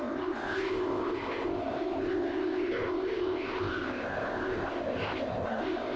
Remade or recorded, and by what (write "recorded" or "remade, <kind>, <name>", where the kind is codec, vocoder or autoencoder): remade, codec, ZipCodec